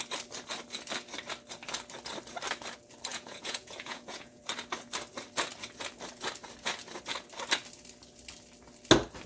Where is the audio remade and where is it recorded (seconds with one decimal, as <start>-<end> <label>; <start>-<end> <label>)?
0.0-3.1 recorded; 3.1-4.4 remade; 4.4-9.3 recorded